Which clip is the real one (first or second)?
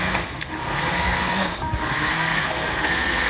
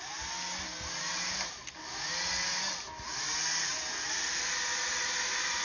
second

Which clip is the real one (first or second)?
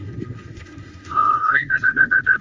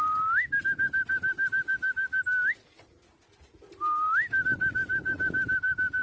second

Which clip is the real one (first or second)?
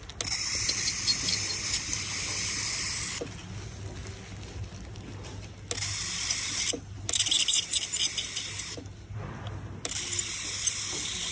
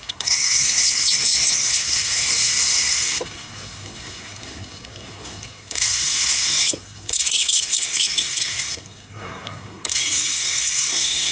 first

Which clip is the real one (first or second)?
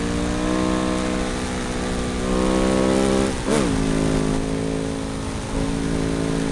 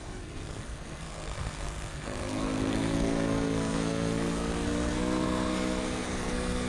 first